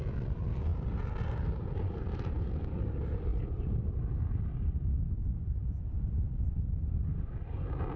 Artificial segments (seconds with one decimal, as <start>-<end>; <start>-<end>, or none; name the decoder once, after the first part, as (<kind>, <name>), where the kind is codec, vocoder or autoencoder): 0.7-2.4 (vocoder, BigVGAN v2)